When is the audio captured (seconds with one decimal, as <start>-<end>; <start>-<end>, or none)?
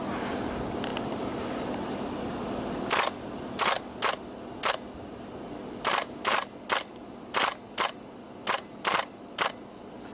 0.0-0.9; 2.3-10.1